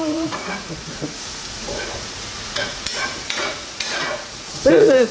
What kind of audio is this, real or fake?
fake